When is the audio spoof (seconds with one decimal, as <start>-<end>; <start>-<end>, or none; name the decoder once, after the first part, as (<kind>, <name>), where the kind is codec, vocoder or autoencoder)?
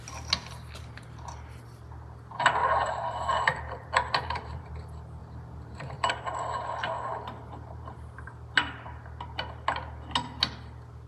2.6-4.7 (vocoder, BigVGAN v2); 5.2-6.1